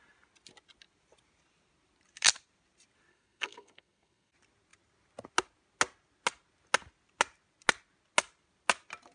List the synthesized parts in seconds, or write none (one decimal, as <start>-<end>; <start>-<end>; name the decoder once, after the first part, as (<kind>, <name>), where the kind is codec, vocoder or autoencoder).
3.1-4.3 (codec, SNAC)